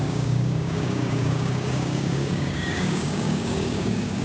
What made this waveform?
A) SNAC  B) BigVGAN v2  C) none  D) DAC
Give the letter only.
D